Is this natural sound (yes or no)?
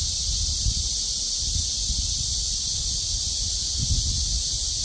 yes